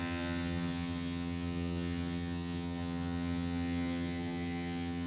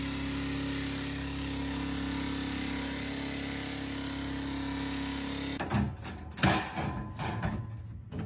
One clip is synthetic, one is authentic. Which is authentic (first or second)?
second